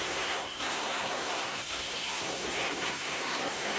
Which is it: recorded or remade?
remade